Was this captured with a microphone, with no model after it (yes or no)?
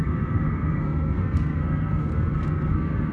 no